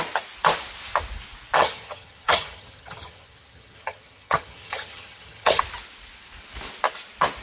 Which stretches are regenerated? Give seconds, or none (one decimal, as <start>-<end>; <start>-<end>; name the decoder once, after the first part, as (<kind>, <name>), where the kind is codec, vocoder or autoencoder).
1.6-5.6 (vocoder, HiFi-GAN)